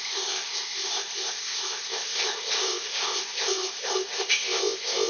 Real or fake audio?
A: fake